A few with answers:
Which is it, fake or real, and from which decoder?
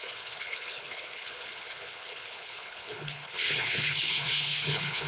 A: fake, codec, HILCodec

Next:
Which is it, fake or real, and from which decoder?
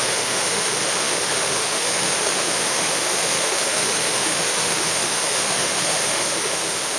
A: fake, autoencoder, DAC-VAE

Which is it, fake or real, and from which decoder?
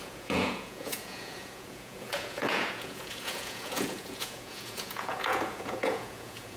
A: fake, vocoder, Vocos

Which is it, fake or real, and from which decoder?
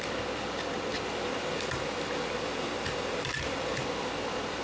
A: real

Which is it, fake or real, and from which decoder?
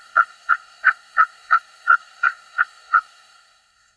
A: fake, codec, SNAC